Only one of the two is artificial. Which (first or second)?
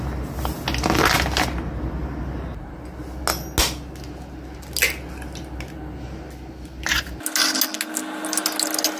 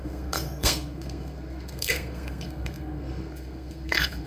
second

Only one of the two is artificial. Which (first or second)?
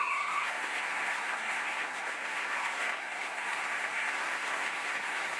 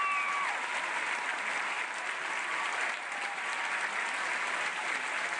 first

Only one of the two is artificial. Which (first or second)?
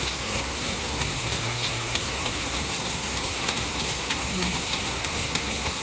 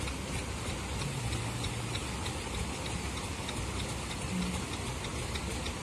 first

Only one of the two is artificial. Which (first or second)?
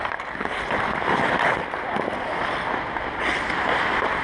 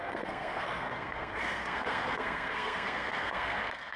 second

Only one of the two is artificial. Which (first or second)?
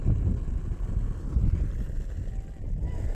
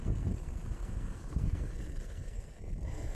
second